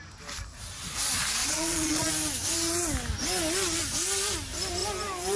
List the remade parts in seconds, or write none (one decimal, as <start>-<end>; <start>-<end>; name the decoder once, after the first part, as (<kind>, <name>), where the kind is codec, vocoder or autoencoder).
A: 1.4-2.1 (vocoder, Vocos)